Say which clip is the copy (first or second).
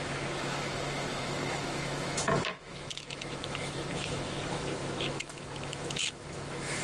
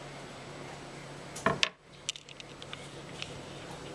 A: first